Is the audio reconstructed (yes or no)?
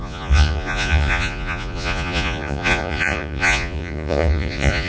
yes